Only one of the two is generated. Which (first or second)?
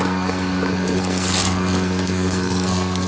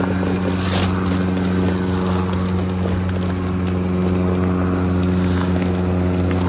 first